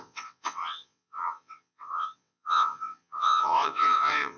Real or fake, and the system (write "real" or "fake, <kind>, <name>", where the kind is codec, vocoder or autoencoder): fake, vocoder, WaveNeXt